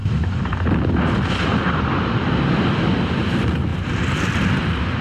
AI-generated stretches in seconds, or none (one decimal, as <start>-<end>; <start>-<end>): 0.0-2.6; 3.7-4.6